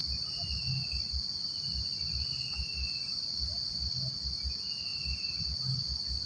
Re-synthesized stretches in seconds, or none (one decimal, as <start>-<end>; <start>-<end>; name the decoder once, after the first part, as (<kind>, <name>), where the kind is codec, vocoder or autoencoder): none